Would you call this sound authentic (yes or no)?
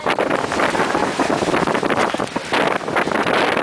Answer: yes